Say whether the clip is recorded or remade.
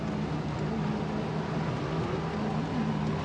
recorded